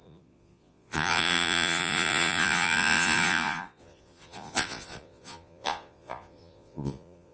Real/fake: fake